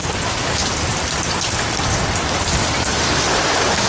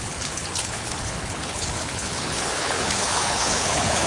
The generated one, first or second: second